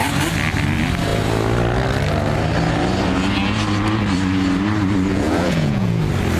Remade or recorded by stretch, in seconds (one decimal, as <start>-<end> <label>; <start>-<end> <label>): 0.0-5.1 recorded; 5.1-6.0 remade; 6.0-6.4 recorded